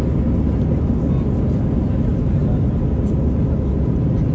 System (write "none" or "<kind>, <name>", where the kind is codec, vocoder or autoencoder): none